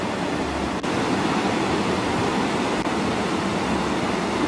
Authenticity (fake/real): fake